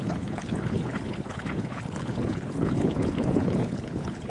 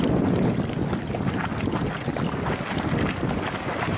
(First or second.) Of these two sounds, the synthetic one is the first